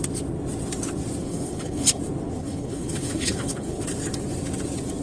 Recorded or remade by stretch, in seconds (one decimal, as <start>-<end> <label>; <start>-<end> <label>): 0.0-1.2 recorded; 1.2-2.0 remade; 2.0-2.4 recorded; 2.4-3.8 remade; 3.8-5.0 recorded